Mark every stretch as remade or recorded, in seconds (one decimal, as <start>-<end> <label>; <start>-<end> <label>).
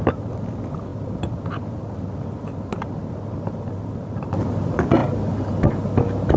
0.0-6.4 recorded